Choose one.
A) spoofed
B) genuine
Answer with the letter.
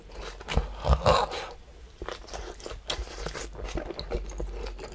B